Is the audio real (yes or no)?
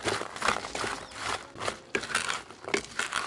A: yes